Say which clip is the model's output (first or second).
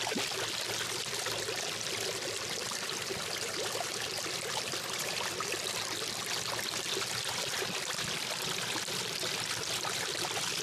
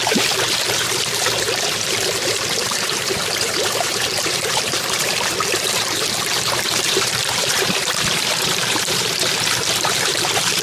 second